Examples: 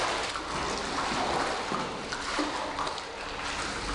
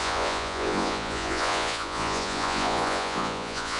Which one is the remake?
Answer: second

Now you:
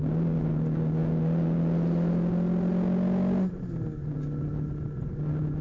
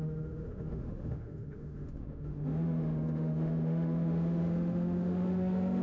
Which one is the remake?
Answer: second